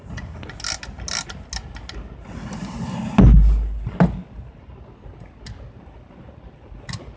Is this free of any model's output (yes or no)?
yes